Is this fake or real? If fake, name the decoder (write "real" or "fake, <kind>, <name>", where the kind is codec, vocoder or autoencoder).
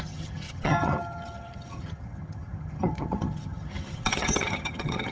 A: fake, vocoder, HiFi-GAN